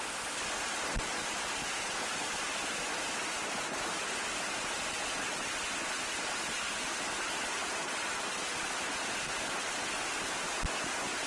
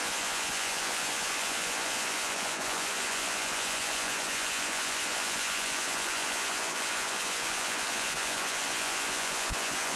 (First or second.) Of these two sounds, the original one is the first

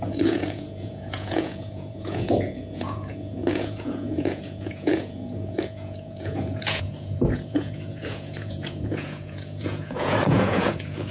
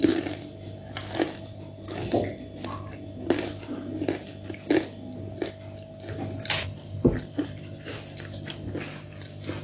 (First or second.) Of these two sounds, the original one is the second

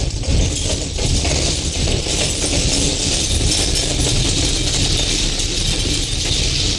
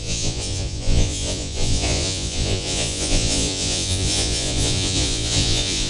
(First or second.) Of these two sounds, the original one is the first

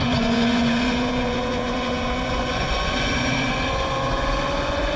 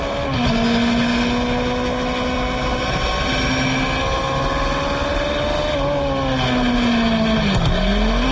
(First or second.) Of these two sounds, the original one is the second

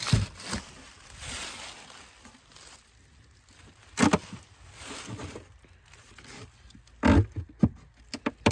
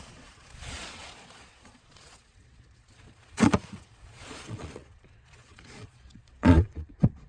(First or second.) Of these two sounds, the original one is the first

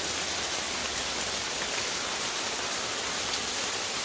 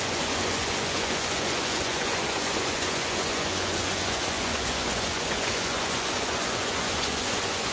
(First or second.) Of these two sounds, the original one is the first